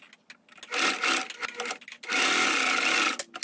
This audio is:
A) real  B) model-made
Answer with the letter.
A